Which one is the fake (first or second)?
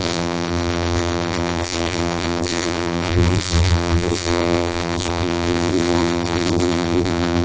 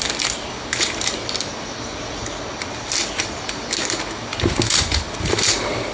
first